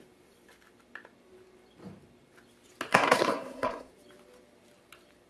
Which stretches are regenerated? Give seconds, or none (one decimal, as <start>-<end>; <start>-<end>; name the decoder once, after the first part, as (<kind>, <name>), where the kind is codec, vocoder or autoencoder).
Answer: 2.9-3.9 (codec, SNAC)

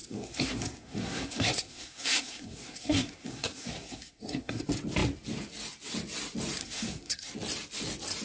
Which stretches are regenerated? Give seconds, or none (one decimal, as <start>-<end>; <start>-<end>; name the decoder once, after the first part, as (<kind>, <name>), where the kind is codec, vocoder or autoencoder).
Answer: 0.0-4.6 (codec, SNAC); 6.6-7.3

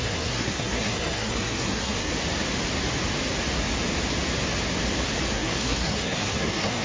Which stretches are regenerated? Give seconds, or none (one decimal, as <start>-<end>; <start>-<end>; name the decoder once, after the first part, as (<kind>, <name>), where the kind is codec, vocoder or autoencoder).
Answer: 0.0-2.1 (codec, SNAC); 5.3-6.8

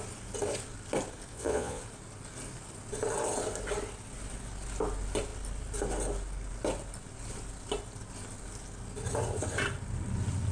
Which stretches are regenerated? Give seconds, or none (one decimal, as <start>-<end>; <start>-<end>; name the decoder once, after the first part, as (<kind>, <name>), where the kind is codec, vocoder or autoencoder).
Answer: 1.3-1.8 (vocoder, Vocos)